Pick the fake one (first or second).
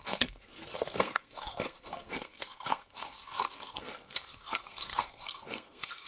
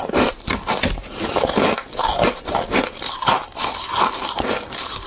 first